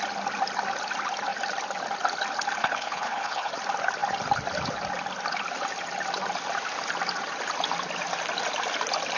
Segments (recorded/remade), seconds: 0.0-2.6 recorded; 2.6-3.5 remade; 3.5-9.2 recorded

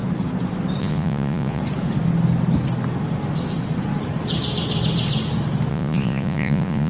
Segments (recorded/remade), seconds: 0.0-0.8 recorded; 0.8-1.6 remade; 1.6-5.7 recorded; 5.7-6.9 remade

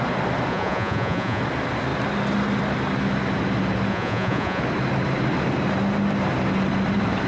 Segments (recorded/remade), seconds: 0.0-0.5 recorded; 0.5-1.4 remade; 1.4-3.9 recorded; 3.9-4.6 remade; 4.6-7.3 recorded

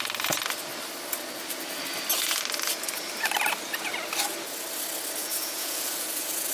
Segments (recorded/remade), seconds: 0.0-5.2 recorded; 5.2-6.5 remade